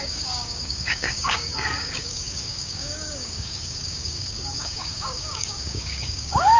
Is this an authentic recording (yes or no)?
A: no